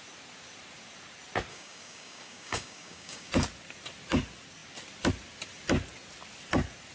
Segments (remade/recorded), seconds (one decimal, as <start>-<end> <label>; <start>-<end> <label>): 0.0-1.5 recorded; 1.5-3.3 remade; 3.3-6.9 recorded